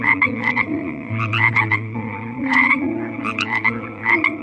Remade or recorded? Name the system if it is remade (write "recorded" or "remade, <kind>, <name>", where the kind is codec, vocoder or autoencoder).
remade, vocoder, Vocos